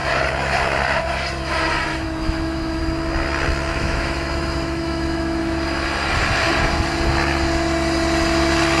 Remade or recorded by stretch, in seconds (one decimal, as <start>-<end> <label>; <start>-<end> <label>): 0.0-1.9 recorded; 1.9-2.8 remade; 2.8-3.7 recorded; 3.7-5.4 remade; 5.4-8.8 recorded